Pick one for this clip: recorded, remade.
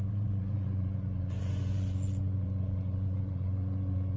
remade